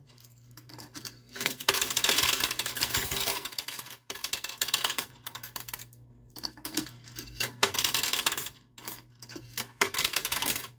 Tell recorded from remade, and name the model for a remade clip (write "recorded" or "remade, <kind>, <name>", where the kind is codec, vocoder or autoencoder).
remade, codec, SNAC